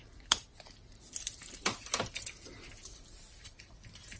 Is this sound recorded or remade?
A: recorded